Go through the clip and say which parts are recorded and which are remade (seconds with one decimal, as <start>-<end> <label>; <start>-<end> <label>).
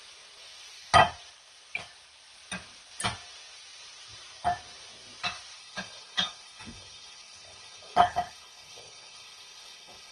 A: 0.0-5.6 recorded; 5.6-10.1 remade